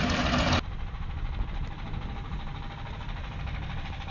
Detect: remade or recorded recorded